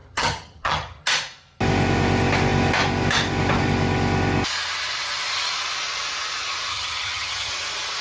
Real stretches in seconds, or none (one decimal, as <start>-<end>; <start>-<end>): 1.0-6.7; 7.5-8.0

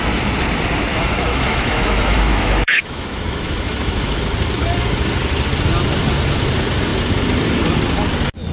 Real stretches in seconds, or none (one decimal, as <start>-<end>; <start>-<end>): 0.0-0.9; 4.2-8.5